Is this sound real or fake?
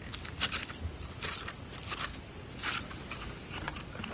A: real